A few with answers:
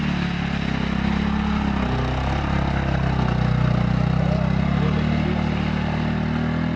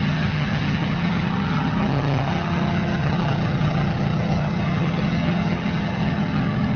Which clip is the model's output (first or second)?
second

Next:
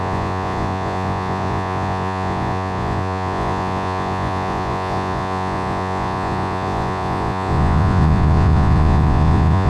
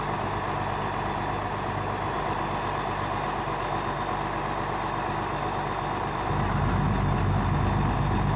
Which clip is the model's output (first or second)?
first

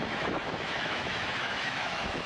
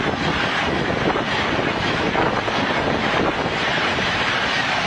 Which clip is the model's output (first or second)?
first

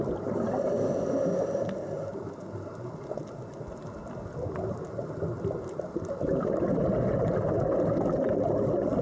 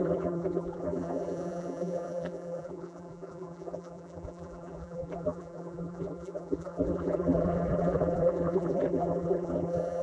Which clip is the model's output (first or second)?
second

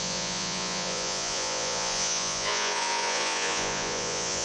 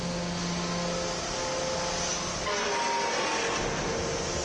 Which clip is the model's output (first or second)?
first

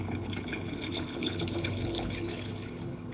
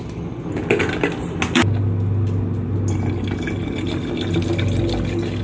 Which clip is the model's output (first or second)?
first